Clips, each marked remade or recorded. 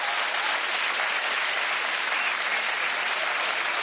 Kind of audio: recorded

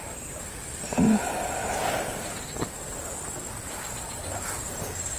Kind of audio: remade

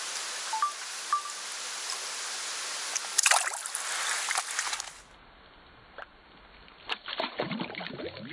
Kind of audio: recorded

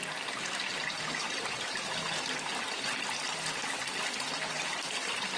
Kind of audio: recorded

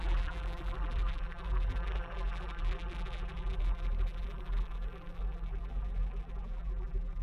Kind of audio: remade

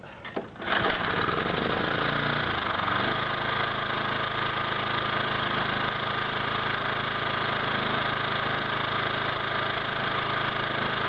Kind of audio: recorded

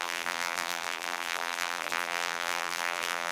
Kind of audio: remade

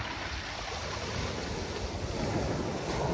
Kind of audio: recorded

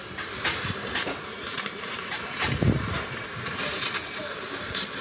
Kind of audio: remade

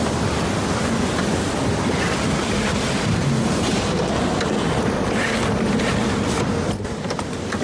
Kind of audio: remade